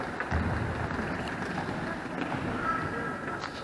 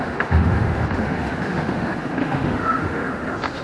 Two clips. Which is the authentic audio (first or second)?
first